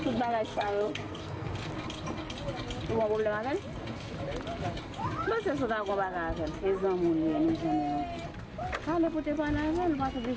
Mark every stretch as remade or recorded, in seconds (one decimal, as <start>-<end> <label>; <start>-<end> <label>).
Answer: 0.0-0.5 recorded; 0.5-1.7 remade; 1.7-10.4 recorded